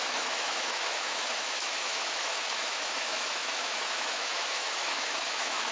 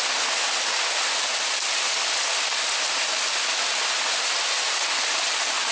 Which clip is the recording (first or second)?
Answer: second